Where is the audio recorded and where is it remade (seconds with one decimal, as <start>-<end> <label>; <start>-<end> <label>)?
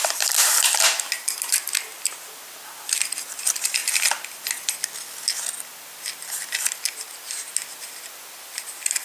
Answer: 0.0-9.0 recorded